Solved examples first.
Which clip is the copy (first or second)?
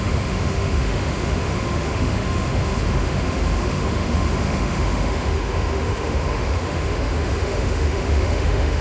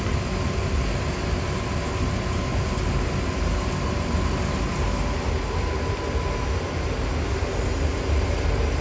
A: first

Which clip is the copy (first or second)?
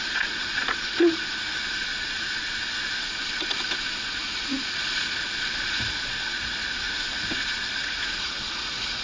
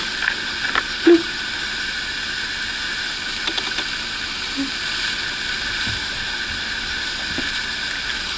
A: first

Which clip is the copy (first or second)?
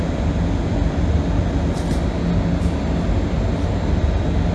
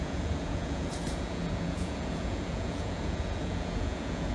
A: second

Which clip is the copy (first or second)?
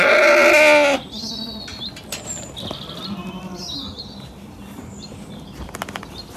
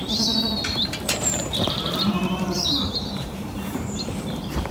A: second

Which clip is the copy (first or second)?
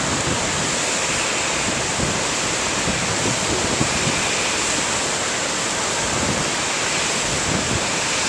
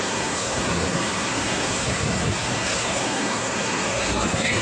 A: second